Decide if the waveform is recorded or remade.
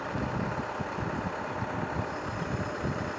recorded